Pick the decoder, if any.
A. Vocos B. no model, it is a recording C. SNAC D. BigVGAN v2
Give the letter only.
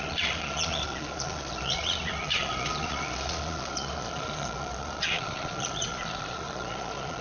A